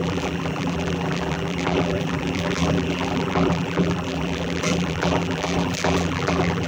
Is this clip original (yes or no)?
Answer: no